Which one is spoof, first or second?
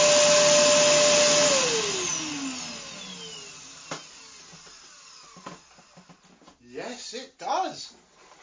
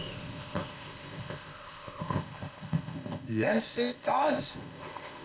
second